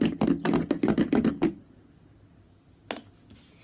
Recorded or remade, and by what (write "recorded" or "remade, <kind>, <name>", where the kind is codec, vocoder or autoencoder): recorded